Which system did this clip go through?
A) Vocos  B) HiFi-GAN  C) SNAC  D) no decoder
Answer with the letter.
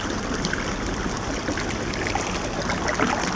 D